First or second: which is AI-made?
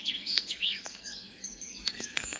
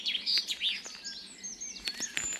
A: first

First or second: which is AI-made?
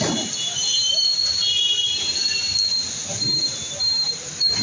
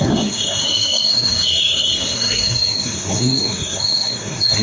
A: second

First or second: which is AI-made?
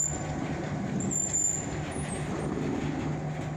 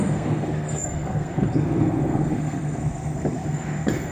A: second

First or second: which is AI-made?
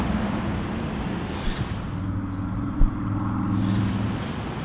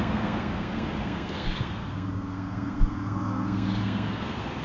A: second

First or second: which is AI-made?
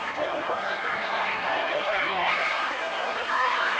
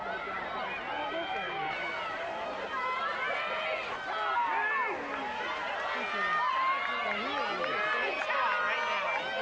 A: first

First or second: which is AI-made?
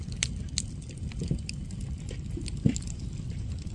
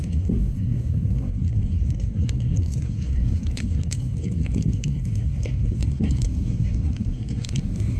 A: second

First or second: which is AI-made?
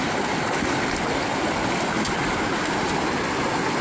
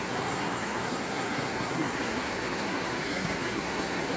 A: second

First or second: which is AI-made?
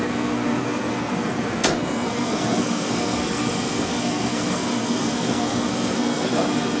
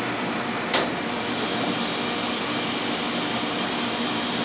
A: first